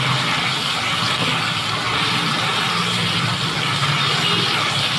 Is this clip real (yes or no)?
yes